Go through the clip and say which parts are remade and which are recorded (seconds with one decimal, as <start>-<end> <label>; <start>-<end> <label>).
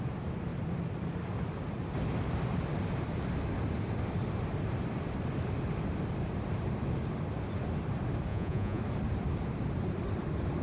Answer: 0.0-8.3 recorded; 8.3-8.8 remade; 8.8-10.6 recorded